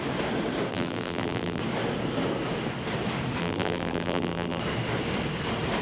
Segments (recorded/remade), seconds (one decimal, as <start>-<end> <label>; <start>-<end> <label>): 0.0-0.7 recorded; 0.7-1.6 remade; 1.6-3.4 recorded; 3.4-4.6 remade; 4.6-5.8 recorded